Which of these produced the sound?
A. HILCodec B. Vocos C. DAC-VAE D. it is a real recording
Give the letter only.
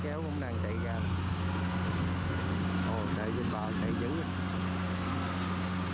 D